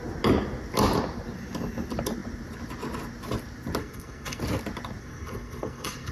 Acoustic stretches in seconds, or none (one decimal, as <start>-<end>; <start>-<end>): 0.0-3.8; 4.4-5.0